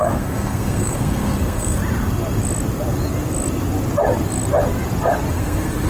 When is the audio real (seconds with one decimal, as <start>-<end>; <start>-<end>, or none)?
1.8-5.3